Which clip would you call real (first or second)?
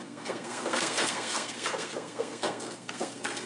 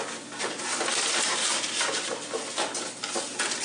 second